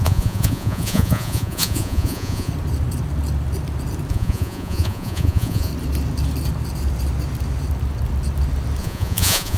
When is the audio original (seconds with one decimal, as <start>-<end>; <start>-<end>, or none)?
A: 2.5-4.1; 5.7-8.8